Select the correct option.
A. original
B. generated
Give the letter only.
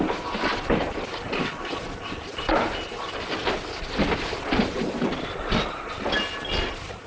A